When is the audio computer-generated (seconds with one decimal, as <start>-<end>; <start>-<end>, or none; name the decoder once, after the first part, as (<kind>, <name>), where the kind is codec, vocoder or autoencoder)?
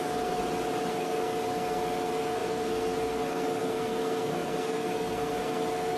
0.0-0.4 (codec, SNAC); 0.9-6.0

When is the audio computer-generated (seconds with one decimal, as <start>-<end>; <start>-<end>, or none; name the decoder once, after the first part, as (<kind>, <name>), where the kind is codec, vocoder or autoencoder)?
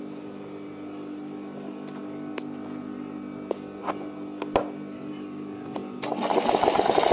none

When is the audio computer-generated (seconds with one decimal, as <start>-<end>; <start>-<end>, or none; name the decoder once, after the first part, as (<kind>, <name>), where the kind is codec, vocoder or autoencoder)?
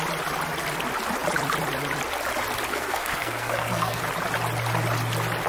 2.7-4.0 (codec, SNAC)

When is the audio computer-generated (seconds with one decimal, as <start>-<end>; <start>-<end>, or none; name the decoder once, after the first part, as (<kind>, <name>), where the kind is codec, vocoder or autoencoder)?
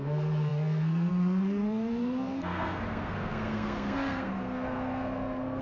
0.0-5.6 (codec, SNAC)